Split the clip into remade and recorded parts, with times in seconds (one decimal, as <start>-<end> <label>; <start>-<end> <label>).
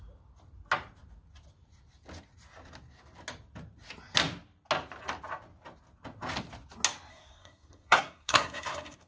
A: 0.0-7.1 recorded; 7.1-9.1 remade